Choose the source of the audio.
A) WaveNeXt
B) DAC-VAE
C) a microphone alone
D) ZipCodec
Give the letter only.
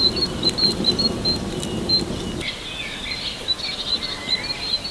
C